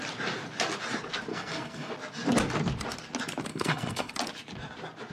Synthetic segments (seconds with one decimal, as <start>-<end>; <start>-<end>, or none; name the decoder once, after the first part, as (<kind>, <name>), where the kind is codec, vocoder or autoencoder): 1.3-1.9 (codec, SNAC); 3.5-4.1